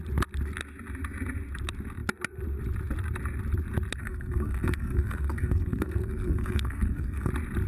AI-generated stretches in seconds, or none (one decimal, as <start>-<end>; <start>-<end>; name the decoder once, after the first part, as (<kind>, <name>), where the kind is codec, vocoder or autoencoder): 4.0-7.3 (codec, SNAC)